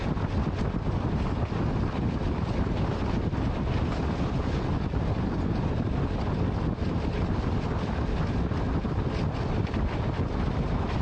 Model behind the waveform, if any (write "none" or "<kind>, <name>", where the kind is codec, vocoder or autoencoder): none